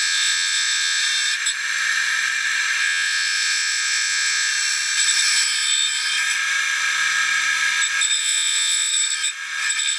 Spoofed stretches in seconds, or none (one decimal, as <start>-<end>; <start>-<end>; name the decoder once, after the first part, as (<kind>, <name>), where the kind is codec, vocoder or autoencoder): 0.0-1.0 (vocoder, Vocos); 2.8-4.5; 8.2-8.9